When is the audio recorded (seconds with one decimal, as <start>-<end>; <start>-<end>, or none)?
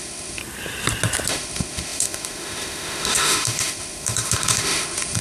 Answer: 0.4-1.3